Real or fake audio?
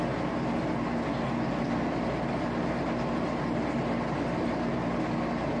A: fake